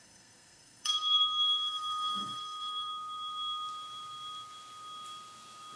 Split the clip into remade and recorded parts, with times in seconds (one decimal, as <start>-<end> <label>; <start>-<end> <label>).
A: 0.0-2.9 remade; 2.9-5.8 recorded